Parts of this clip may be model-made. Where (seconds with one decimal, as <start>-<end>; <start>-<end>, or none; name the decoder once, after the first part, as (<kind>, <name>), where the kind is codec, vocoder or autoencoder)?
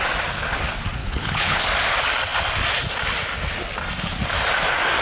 1.0-1.6 (codec, HILCodec)